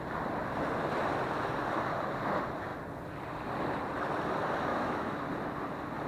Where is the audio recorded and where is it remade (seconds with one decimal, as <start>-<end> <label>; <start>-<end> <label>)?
0.0-4.7 recorded; 4.7-5.2 remade; 5.2-6.1 recorded